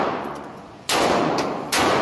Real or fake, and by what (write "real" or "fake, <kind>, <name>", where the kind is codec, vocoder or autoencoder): fake, vocoder, Vocos